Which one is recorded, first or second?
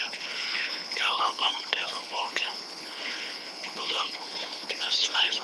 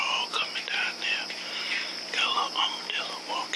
second